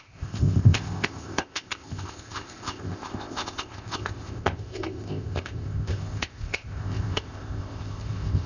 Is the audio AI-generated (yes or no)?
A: yes